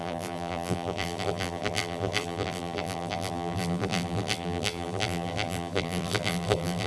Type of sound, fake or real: fake